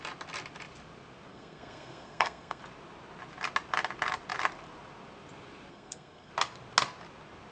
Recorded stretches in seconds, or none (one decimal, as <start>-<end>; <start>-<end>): 0.0-1.3; 2.6-5.7; 6.3-7.5